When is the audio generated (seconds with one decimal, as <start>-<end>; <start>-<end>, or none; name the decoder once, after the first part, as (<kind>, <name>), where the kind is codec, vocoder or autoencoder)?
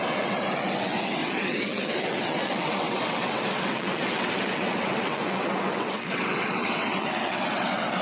0.0-8.0 (vocoder, WaveNeXt)